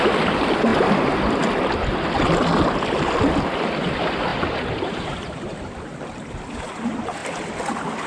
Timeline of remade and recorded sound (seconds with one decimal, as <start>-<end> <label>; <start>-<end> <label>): 0.0-4.3 recorded; 4.3-6.4 remade; 6.4-8.1 recorded